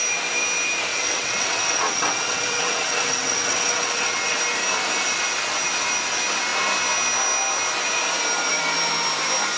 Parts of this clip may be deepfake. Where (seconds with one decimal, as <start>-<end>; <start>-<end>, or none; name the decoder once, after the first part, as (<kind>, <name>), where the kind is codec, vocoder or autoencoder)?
0.9-4.4 (vocoder, WaveNeXt)